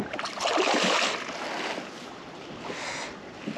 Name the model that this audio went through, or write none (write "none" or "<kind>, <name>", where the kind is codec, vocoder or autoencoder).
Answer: none